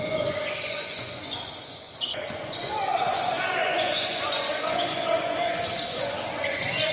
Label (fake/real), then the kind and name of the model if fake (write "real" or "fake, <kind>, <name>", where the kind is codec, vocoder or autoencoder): fake, vocoder, Vocos